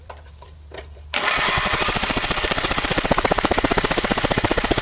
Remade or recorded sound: remade